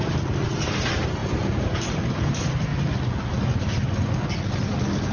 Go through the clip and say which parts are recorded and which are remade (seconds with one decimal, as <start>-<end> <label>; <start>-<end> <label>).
0.0-1.2 recorded; 1.2-1.9 remade; 1.9-5.1 recorded